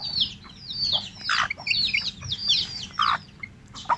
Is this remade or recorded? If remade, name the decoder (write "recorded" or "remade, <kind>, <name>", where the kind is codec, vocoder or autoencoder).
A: recorded